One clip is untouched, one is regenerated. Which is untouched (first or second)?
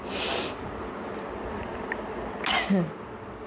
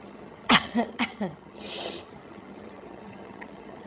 first